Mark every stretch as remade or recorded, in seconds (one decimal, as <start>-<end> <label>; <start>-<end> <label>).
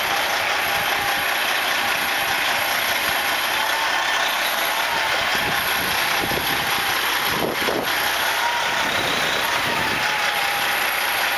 0.0-5.3 recorded; 5.3-6.3 remade; 6.3-11.4 recorded